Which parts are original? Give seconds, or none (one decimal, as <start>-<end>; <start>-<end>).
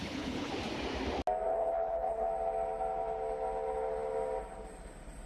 0.5-1.5; 2.3-5.3